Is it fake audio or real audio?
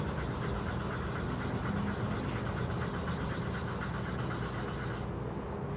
real